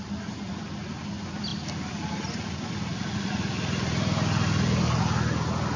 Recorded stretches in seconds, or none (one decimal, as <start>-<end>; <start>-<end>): 0.0-5.8